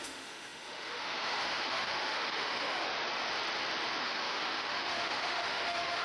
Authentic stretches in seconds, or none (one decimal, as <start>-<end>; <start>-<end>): 2.9-4.0